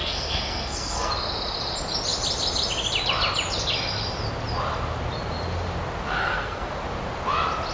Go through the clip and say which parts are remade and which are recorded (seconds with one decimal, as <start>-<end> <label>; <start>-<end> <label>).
0.0-1.1 remade; 1.1-6.2 recorded; 6.2-6.7 remade; 6.7-7.7 recorded